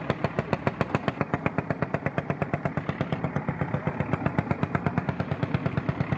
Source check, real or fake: real